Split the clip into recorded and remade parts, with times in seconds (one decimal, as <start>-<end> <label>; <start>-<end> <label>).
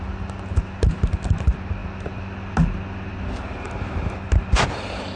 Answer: 0.0-5.2 recorded